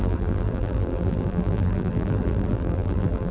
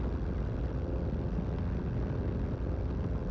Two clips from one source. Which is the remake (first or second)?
first